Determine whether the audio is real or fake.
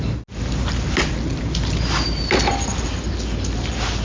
real